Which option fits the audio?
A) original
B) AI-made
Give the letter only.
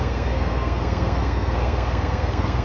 B